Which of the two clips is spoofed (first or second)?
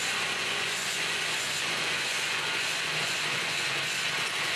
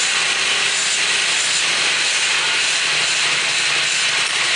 first